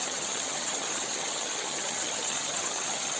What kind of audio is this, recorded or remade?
remade